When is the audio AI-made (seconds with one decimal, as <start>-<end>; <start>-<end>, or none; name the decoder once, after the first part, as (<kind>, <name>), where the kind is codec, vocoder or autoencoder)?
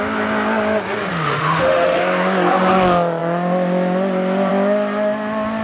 1.1-2.0 (autoencoder, DAC-VAE)